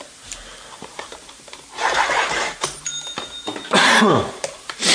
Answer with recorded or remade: remade